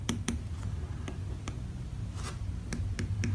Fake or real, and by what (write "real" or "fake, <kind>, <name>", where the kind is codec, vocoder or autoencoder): real